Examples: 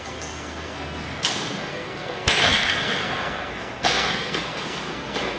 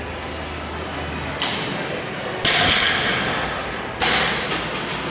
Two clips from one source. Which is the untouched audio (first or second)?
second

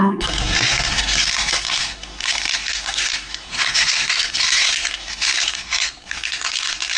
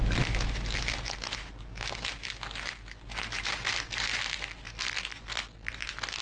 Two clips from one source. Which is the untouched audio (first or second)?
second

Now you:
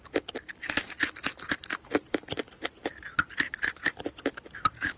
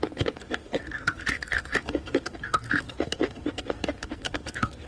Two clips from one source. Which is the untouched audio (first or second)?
first